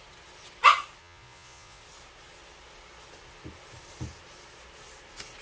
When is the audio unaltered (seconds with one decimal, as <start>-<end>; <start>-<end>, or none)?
0.0-1.0; 1.8-5.4